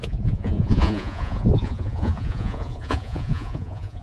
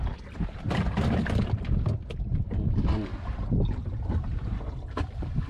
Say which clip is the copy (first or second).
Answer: first